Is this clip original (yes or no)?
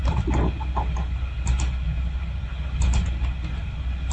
yes